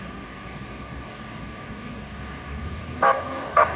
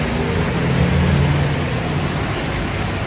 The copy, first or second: first